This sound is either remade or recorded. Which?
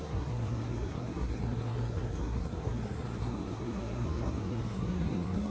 remade